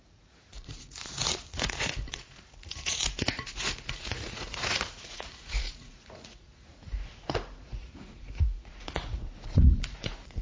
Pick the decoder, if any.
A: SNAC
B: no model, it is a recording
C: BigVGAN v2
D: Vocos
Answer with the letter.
D